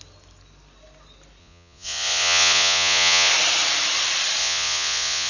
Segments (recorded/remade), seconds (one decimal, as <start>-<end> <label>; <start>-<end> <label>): 0.0-1.4 recorded; 1.4-3.3 remade; 3.3-4.4 recorded; 4.4-5.3 remade